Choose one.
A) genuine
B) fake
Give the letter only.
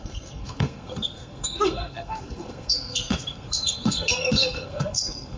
B